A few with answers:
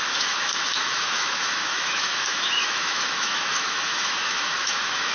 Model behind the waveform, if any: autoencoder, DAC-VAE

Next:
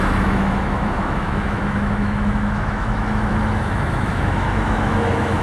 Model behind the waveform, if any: autoencoder, DAC-VAE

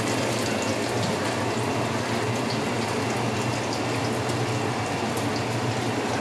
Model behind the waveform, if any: none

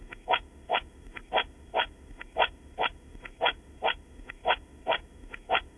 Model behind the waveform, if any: autoencoder, DAC-VAE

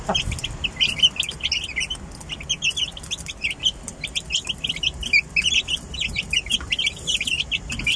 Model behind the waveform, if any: none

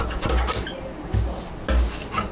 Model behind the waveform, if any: none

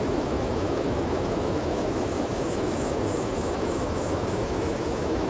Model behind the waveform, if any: autoencoder, DAC-VAE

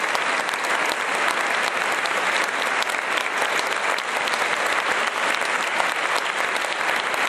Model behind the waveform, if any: none